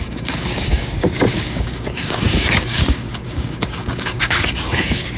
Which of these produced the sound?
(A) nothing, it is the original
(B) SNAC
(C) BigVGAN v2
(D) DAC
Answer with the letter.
D